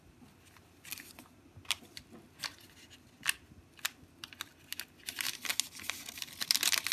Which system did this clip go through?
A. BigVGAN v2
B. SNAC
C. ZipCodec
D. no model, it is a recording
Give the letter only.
D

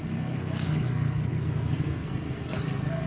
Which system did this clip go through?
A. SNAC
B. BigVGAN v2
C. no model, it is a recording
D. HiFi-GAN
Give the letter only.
A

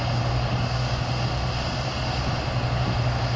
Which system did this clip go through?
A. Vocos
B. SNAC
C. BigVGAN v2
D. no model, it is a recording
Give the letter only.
D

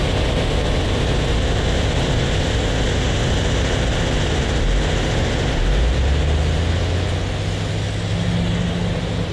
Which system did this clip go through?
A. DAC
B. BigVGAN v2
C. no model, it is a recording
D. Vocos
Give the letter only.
C